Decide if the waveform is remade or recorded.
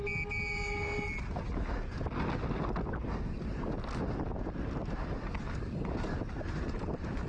recorded